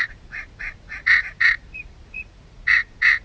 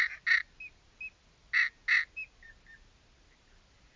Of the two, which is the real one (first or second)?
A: second